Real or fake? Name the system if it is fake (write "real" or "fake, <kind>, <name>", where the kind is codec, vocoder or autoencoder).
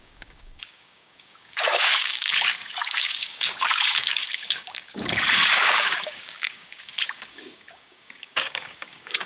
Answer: fake, codec, DAC